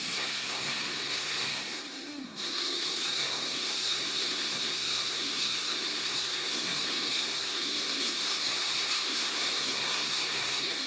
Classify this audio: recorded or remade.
remade